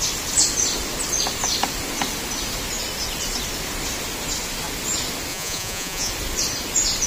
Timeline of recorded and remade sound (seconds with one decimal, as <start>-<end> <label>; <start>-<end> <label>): 0.0-5.3 recorded; 5.3-6.1 remade; 6.1-7.1 recorded